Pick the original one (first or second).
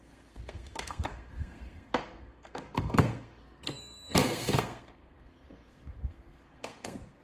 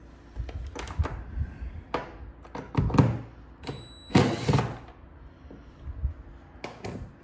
second